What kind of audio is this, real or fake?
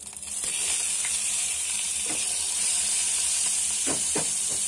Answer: real